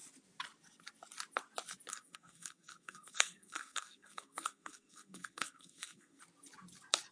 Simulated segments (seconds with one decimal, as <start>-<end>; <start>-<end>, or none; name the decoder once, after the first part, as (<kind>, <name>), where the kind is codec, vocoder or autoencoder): 1.9-6.2 (codec, SNAC)